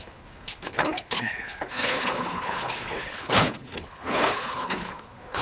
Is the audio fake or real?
fake